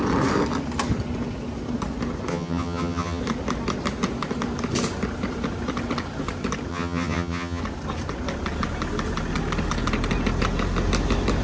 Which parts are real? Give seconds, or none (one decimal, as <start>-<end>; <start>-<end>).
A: 0.0-2.3; 3.2-6.7; 7.6-11.4